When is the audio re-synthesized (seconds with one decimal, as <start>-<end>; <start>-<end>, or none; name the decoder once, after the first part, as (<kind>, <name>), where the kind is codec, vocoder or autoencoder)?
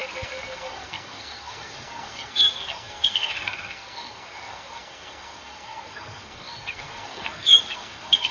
0.0-8.3 (codec, SNAC)